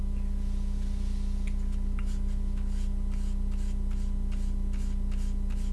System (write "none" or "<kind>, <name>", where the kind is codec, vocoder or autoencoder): none